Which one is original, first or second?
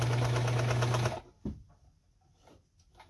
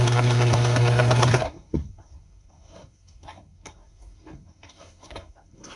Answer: first